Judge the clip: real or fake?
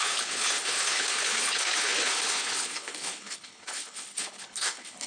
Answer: fake